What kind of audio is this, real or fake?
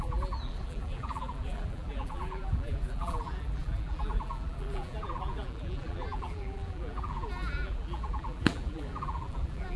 fake